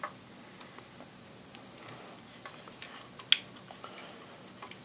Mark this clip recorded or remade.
recorded